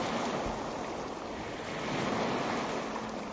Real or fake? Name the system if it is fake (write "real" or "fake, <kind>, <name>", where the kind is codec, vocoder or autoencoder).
real